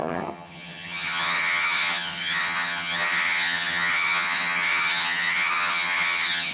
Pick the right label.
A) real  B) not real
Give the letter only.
B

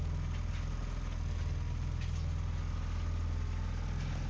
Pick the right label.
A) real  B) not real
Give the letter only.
A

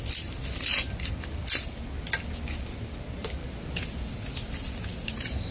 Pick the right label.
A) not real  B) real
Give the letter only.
B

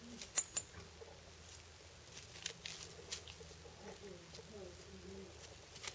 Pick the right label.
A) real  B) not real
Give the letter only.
A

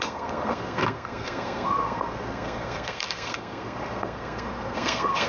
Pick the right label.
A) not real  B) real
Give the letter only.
A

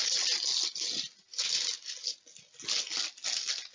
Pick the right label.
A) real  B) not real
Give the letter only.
A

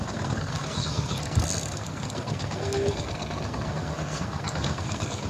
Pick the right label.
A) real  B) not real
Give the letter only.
B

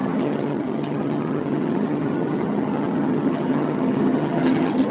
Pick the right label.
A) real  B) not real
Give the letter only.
B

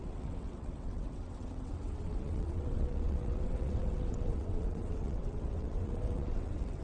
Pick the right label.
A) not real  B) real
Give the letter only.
A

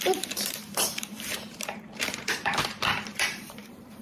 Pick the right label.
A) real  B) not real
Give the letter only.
B